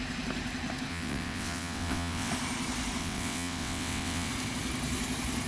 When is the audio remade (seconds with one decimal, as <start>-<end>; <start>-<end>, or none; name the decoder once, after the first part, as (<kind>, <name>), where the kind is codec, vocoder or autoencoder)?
0.9-2.3 (vocoder, WaveNeXt); 3.0-4.3

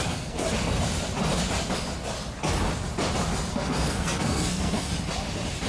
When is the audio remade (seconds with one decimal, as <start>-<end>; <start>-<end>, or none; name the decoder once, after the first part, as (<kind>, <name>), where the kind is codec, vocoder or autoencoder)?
0.0-0.4 (codec, SNAC); 3.5-4.9

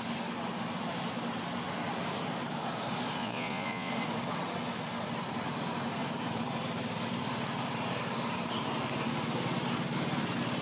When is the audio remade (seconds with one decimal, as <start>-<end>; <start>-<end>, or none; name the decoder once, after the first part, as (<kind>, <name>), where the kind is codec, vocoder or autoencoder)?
3.2-3.9 (vocoder, Vocos)

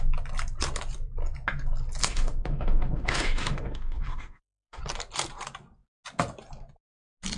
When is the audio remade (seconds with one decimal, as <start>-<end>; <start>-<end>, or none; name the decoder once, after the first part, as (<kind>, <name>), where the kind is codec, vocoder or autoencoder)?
2.0-4.8 (autoencoder, DAC-VAE)